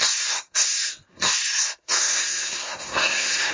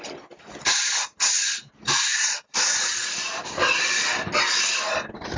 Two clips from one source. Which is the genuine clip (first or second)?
second